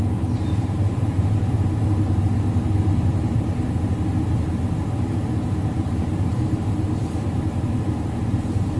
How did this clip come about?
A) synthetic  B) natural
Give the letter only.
A